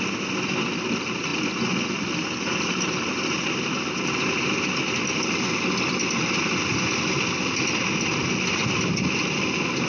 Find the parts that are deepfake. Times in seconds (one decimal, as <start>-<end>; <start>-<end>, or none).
none